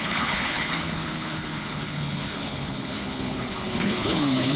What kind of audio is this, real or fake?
fake